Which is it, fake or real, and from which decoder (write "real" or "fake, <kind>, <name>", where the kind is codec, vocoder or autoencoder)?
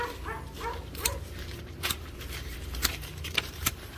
fake, vocoder, BigVGAN v2